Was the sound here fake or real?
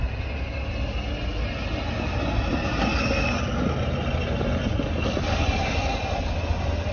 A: real